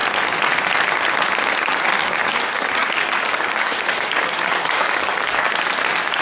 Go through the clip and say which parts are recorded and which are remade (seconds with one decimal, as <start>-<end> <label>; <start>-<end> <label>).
0.0-2.0 recorded; 2.0-5.5 remade; 5.5-6.2 recorded